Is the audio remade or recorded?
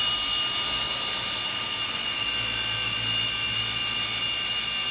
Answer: recorded